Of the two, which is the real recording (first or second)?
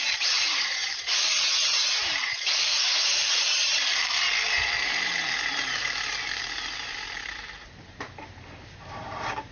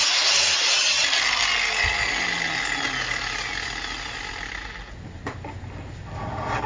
second